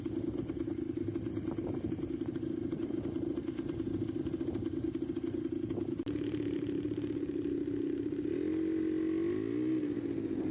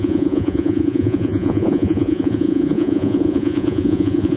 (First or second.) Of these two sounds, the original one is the first